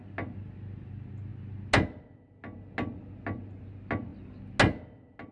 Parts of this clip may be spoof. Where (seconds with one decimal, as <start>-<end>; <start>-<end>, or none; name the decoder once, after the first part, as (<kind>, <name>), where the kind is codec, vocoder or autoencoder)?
none